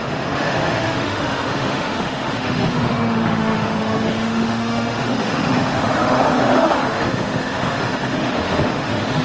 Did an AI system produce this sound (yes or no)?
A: yes